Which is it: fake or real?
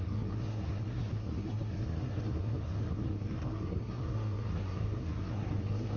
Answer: fake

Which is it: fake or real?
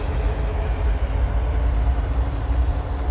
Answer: real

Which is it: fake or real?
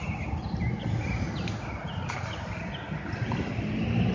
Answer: real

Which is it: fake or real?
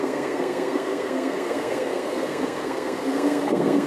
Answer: fake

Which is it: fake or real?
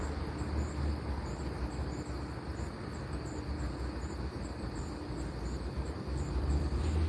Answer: real